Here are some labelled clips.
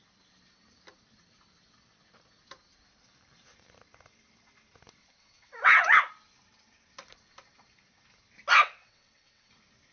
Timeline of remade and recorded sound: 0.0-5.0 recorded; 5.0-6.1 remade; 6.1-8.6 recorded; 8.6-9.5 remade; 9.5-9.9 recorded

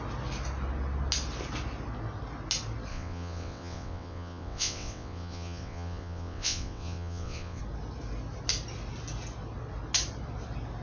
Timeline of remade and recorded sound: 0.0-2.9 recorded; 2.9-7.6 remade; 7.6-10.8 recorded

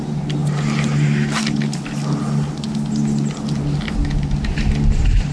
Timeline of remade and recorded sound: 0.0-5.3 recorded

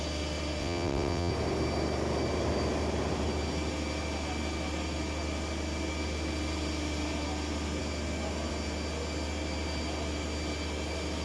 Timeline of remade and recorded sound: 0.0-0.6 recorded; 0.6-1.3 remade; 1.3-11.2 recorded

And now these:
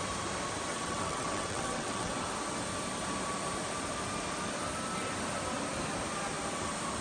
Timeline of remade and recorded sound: 0.0-0.7 recorded; 0.7-2.1 remade; 2.1-7.0 recorded